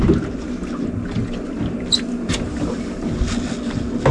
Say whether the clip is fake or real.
real